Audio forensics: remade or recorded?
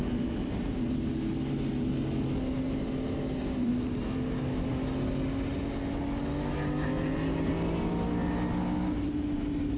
recorded